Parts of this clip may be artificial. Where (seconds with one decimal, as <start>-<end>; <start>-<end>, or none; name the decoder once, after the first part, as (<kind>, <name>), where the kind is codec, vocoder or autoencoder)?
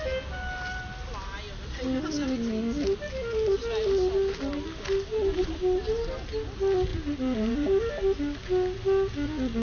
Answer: 6.9-7.9 (vocoder, BigVGAN v2)